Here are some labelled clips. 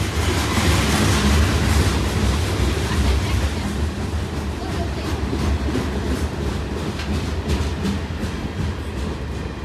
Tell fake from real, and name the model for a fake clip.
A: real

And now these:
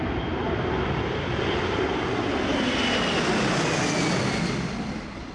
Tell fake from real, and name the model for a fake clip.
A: real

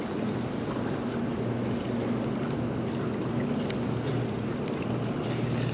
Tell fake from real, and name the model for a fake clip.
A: real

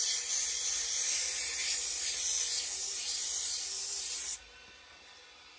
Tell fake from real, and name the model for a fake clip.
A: real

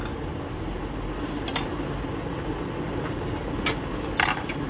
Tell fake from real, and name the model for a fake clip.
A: real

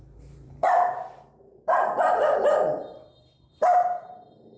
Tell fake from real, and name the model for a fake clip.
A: fake, vocoder, BigVGAN v2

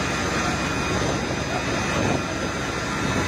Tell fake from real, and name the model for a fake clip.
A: real